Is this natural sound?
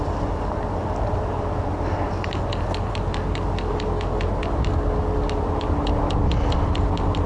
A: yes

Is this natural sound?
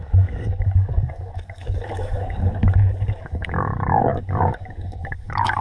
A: no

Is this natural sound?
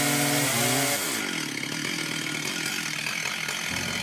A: yes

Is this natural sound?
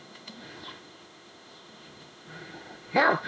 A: no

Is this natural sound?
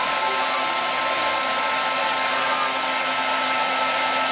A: yes